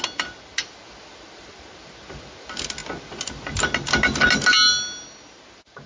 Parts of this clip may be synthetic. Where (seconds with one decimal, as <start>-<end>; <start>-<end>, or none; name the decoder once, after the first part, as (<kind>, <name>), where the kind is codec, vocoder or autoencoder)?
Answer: none